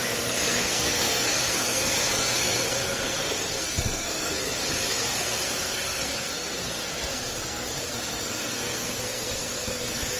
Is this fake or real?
fake